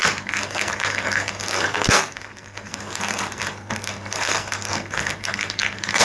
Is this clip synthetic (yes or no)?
yes